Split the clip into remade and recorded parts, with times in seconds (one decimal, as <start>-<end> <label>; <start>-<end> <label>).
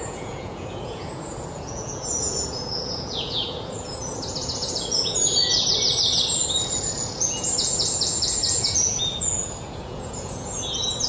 0.0-5.5 remade; 5.5-6.5 recorded; 6.5-11.1 remade